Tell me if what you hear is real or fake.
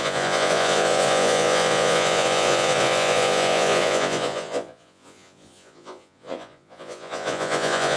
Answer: fake